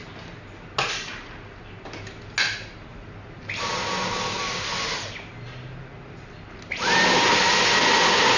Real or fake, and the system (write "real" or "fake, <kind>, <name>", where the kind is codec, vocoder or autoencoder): real